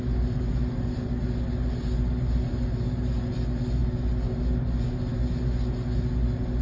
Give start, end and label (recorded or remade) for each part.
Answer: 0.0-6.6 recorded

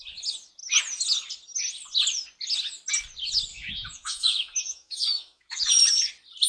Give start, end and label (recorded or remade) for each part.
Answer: 0.0-3.5 recorded; 3.5-5.7 remade; 5.7-6.5 recorded

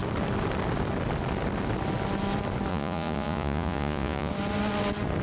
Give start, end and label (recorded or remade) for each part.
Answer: 0.0-2.7 recorded; 2.7-4.3 remade; 4.3-5.2 recorded

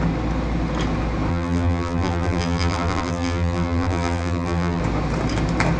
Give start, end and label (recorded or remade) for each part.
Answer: 0.0-1.3 recorded; 1.3-4.8 remade; 4.8-5.8 recorded

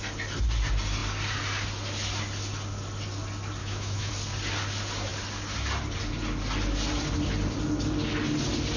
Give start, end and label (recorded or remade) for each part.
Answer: 0.0-3.6 recorded; 3.6-4.1 remade; 4.1-8.8 recorded

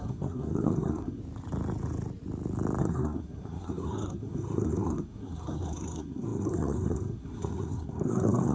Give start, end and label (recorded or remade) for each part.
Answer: 0.0-1.2 remade; 1.2-2.8 recorded; 2.8-8.5 remade

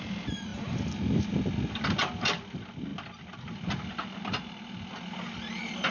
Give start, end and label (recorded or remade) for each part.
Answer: 0.0-5.9 recorded